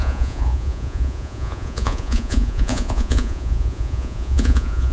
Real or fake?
fake